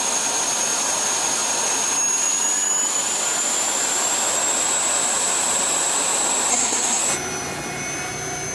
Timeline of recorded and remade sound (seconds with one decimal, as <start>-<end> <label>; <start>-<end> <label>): 0.0-6.5 recorded; 6.5-7.0 remade; 7.0-8.5 recorded